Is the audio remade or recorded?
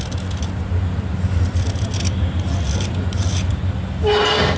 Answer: recorded